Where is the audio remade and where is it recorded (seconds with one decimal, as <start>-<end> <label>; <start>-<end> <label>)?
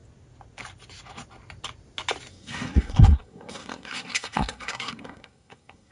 0.0-2.3 recorded; 2.3-5.9 remade